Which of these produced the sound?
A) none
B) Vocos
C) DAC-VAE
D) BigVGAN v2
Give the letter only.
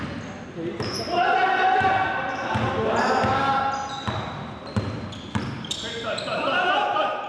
A